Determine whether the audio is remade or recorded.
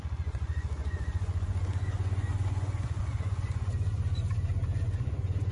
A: remade